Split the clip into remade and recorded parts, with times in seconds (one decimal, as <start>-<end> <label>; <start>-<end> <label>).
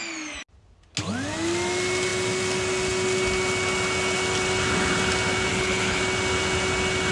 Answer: 0.0-5.5 recorded; 5.5-6.0 remade; 6.0-7.1 recorded